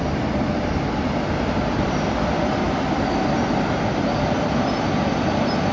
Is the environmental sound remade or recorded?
remade